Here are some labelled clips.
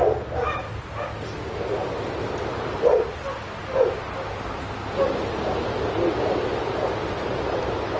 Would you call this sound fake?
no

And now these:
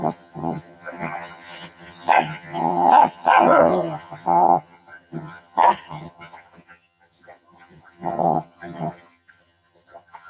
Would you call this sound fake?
yes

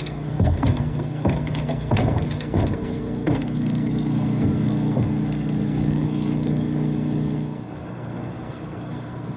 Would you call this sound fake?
yes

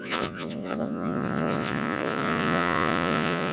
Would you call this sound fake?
yes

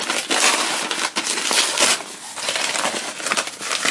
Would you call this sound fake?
no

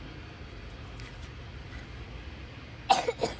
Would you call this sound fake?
no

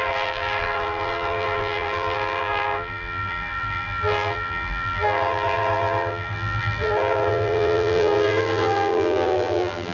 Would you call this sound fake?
yes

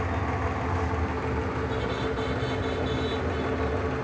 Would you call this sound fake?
no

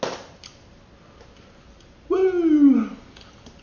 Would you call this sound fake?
no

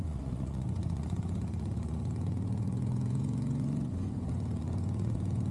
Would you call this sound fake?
yes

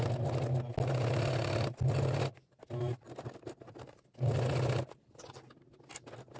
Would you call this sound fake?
no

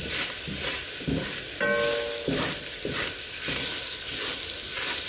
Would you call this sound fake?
no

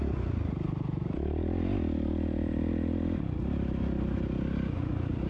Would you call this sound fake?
no